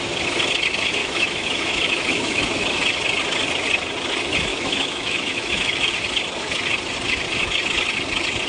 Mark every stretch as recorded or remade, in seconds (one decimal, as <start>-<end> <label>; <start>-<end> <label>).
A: 0.0-1.0 recorded; 1.0-2.8 remade; 2.8-4.5 recorded; 4.5-5.9 remade; 5.9-8.5 recorded